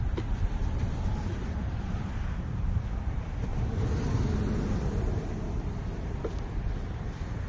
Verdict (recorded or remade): recorded